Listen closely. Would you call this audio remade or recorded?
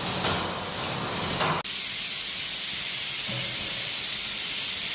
recorded